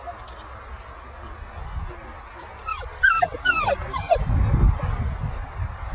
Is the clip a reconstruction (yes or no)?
no